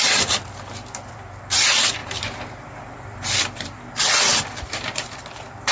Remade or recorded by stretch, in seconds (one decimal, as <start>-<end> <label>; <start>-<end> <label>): 0.0-5.7 remade